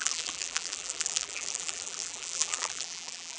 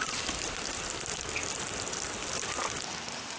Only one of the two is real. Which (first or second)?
second